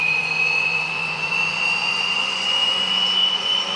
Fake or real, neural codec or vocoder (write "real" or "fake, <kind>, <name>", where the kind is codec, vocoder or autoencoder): fake, vocoder, Vocos